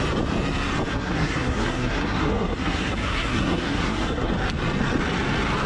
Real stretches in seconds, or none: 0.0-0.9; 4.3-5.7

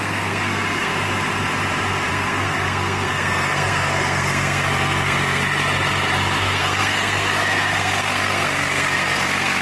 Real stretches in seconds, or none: 0.9-2.1; 5.4-6.4

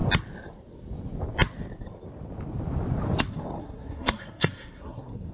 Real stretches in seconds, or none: 0.0-3.6

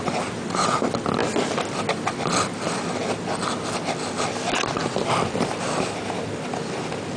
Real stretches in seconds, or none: 0.0-7.2

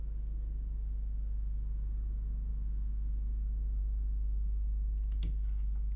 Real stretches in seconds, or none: 0.0-6.0

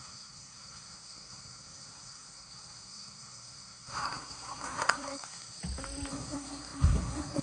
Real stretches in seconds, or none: 5.6-6.1

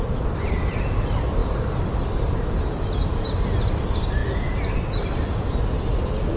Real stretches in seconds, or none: 0.0-6.4

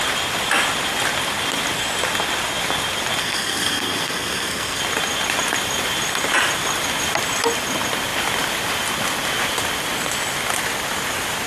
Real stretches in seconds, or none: 0.0-3.2; 4.8-11.5